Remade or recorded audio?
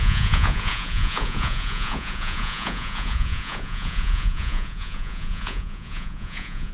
remade